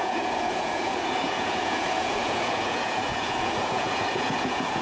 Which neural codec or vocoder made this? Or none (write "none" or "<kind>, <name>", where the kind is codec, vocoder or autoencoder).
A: vocoder, Vocos